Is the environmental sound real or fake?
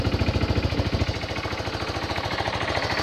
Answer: real